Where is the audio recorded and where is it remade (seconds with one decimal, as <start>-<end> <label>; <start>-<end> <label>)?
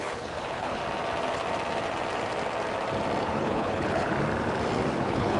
0.0-0.8 remade; 0.8-3.2 recorded; 3.2-4.1 remade; 4.1-5.0 recorded; 5.0-5.4 remade